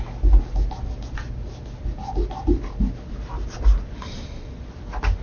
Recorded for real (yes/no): yes